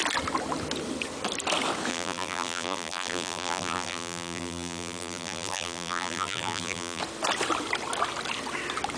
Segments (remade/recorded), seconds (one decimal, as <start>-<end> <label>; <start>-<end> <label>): 0.0-1.9 recorded; 1.9-7.0 remade; 7.0-9.0 recorded